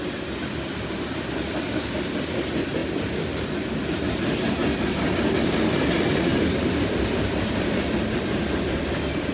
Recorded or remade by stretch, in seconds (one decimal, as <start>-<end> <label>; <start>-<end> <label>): 0.0-9.3 recorded

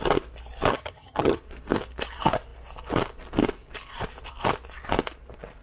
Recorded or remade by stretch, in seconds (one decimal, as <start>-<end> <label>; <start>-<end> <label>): 0.0-0.7 recorded; 0.7-1.4 remade; 1.4-5.6 recorded

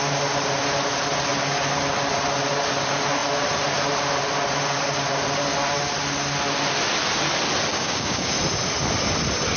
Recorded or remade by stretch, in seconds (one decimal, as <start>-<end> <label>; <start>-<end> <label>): 0.0-7.7 recorded; 7.7-8.3 remade; 8.3-9.6 recorded